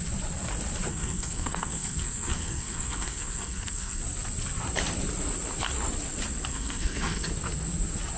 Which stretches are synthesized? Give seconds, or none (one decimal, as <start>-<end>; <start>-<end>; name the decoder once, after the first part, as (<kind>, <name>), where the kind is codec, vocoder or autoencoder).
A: 0.9-4.0 (codec, SNAC); 6.5-7.3